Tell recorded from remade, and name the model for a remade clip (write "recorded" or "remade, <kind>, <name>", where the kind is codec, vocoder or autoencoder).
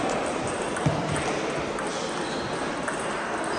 recorded